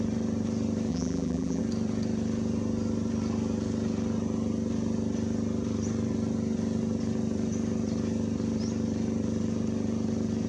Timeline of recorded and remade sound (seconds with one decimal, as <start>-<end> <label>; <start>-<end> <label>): 0.0-0.9 recorded; 0.9-1.6 remade; 1.6-10.5 recorded